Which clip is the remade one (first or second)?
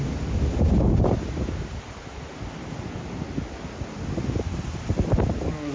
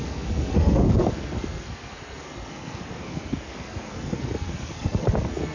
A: second